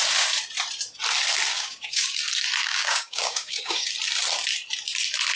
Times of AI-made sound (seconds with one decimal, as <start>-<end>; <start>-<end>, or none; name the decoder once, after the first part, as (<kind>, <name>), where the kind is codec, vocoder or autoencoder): 1.5-2.2 (codec, DAC); 2.6-3.9